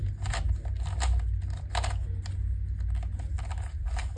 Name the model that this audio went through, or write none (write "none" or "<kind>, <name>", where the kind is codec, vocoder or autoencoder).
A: none